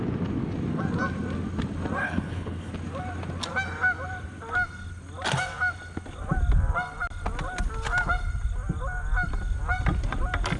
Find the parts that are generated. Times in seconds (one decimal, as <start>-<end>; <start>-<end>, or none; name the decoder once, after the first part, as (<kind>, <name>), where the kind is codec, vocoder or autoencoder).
2.0-2.7 (codec, HILCodec)